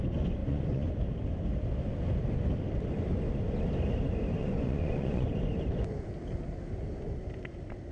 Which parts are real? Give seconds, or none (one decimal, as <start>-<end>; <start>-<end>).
0.0-0.4; 0.9-4.4; 5.3-7.9